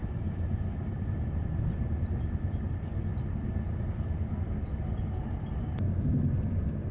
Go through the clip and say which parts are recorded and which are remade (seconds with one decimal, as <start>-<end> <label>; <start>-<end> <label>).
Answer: 0.0-2.1 remade; 2.1-6.9 recorded